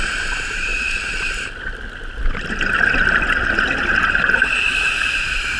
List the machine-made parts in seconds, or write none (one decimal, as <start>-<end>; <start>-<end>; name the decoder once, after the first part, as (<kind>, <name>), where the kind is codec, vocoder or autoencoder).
0.0-0.7 (vocoder, BigVGAN v2); 4.1-5.6